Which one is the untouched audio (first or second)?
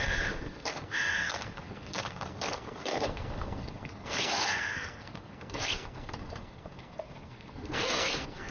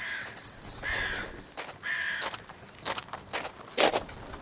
second